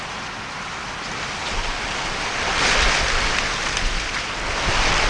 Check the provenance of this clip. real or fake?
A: real